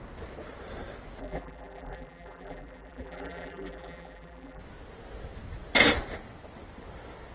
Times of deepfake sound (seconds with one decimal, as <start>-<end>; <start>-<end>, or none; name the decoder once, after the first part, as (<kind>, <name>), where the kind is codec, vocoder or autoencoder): 1.2-4.6 (vocoder, BigVGAN v2)